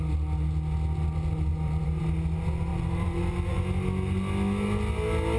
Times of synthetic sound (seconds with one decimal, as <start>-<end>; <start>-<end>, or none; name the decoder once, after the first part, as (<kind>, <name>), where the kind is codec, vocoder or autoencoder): 1.5-2.0 (vocoder, BigVGAN v2); 2.7-3.3